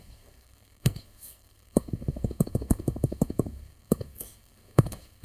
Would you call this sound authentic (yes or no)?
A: no